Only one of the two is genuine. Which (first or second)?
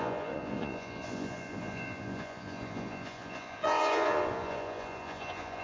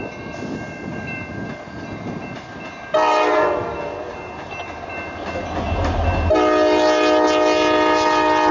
second